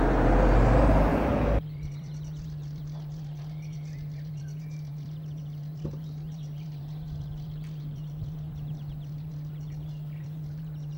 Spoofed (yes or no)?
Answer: yes